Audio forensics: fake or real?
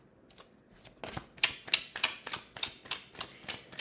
real